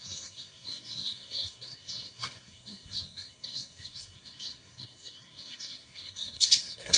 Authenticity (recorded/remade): remade